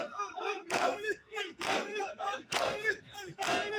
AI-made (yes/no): yes